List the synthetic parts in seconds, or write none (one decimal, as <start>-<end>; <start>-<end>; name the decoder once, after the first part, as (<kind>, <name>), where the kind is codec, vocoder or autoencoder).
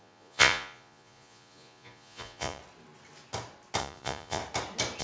0.0-2.6 (vocoder, Vocos); 3.8-4.4